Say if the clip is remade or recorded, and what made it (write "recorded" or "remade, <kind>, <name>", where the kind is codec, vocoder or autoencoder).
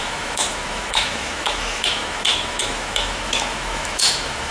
remade, autoencoder, DAC-VAE